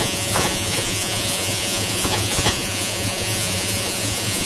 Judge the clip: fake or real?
fake